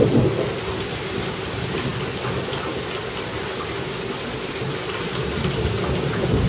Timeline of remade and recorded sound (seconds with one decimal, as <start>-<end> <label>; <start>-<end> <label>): 0.0-6.5 recorded